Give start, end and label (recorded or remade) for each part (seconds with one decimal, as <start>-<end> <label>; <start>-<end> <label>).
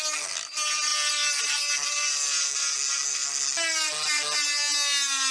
0.0-5.3 recorded